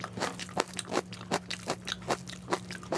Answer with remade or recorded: recorded